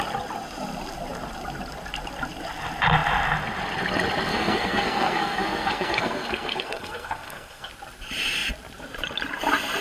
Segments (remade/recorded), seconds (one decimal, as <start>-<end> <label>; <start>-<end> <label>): 0.0-4.3 recorded; 4.3-7.7 remade; 7.7-9.8 recorded